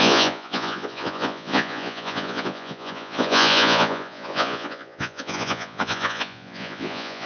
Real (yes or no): no